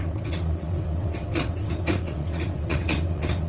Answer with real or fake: fake